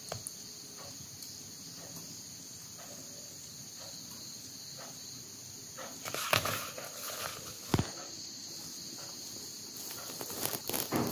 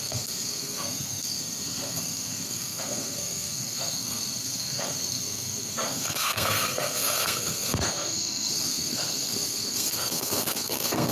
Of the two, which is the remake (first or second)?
second